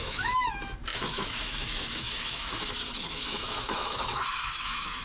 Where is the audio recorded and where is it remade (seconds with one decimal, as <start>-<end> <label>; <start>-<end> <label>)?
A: 0.0-5.0 remade